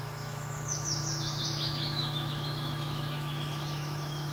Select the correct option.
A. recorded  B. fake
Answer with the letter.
B